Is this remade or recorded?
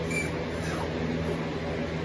recorded